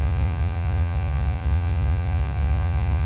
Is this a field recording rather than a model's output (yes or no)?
no